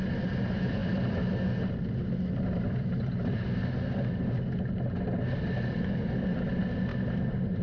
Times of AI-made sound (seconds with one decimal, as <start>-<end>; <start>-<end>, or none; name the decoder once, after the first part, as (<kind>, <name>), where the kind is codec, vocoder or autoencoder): none